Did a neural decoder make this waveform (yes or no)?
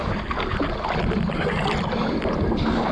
no